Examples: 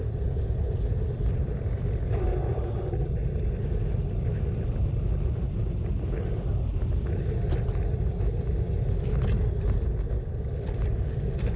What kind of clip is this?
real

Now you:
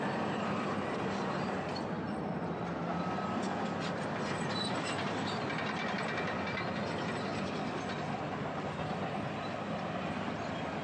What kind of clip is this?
real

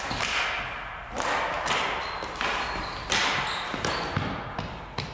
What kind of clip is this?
real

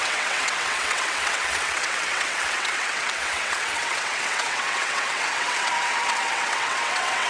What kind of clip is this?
fake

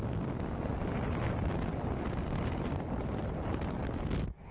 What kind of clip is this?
real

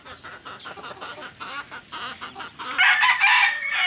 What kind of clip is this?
real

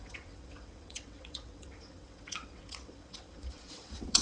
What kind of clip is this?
fake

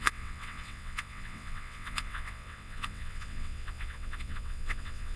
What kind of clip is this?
fake